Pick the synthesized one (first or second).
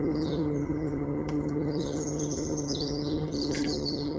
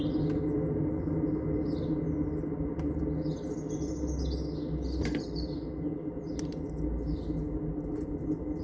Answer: first